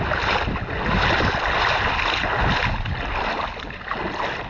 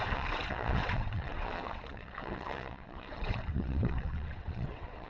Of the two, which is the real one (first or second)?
first